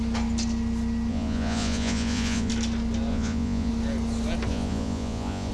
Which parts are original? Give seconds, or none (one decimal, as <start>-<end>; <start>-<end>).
0.0-1.1; 2.5-3.1; 3.7-4.5